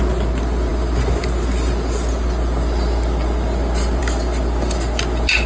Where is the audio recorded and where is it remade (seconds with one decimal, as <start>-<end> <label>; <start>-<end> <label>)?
0.0-5.5 recorded